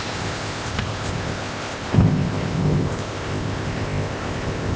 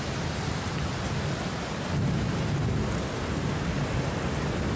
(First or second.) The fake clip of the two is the first